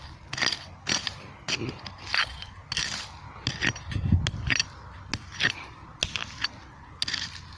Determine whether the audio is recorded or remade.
recorded